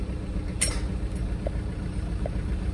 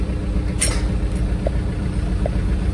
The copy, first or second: first